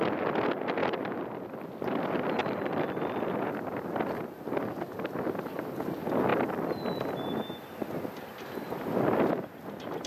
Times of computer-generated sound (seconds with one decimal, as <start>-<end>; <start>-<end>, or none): 2.4-3.3